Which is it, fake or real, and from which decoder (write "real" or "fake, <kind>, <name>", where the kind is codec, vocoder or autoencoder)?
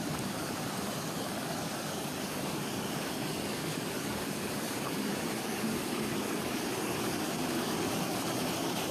fake, codec, DAC